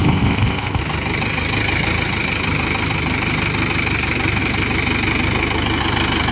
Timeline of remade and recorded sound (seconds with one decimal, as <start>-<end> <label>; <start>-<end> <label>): 0.0-0.8 remade; 0.8-6.3 recorded